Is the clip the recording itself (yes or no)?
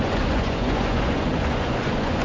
no